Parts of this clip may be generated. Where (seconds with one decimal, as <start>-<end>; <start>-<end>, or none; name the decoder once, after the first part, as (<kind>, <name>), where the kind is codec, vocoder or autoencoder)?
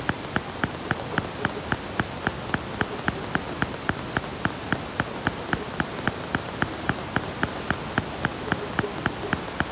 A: none